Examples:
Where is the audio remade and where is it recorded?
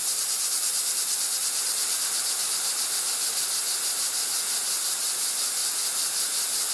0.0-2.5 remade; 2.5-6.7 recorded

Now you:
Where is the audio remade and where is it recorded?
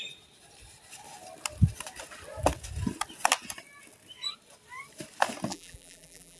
0.0-5.5 recorded; 5.5-6.4 remade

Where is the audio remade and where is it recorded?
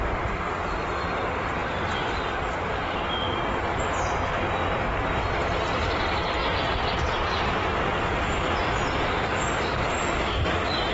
0.0-10.9 recorded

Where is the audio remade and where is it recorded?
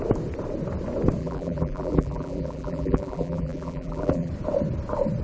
0.0-1.2 recorded; 1.2-4.3 remade; 4.3-5.2 recorded